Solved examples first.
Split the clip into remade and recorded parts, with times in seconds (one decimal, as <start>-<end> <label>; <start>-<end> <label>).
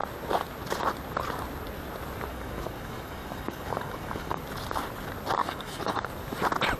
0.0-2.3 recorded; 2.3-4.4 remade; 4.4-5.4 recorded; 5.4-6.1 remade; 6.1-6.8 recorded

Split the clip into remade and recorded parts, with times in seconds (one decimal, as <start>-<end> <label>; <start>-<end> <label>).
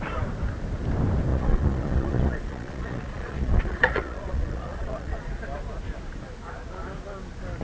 0.0-1.3 recorded; 1.3-5.4 remade; 5.4-7.6 recorded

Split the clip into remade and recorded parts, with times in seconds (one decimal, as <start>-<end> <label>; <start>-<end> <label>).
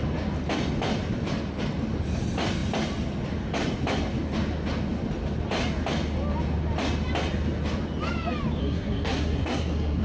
0.0-8.6 recorded; 8.6-10.0 remade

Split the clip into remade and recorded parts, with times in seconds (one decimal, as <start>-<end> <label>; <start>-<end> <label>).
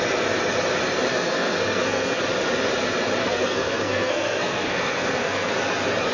0.0-1.1 recorded; 1.1-2.2 remade; 2.2-3.2 recorded; 3.2-5.5 remade; 5.5-6.1 recorded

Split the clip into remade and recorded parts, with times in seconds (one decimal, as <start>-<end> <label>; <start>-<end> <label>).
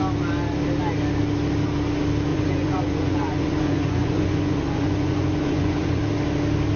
0.0-2.3 recorded; 2.3-6.0 remade; 6.0-6.8 recorded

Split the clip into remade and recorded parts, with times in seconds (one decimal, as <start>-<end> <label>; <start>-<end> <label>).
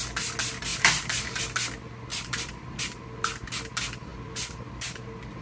0.0-0.7 recorded; 0.7-1.4 remade; 1.4-2.1 recorded; 2.1-2.8 remade; 2.8-4.1 recorded; 4.1-4.8 remade; 4.8-5.4 recorded